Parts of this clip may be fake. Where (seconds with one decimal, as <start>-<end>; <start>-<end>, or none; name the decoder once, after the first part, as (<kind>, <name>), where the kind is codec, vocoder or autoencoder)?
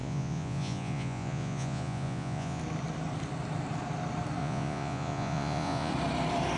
0.0-2.6 (vocoder, Vocos); 4.4-5.9